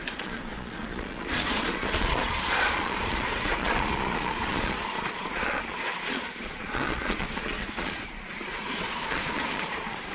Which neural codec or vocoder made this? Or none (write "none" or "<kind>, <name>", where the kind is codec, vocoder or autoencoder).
vocoder, Vocos